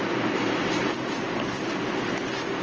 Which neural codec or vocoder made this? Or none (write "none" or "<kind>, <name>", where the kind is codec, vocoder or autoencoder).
none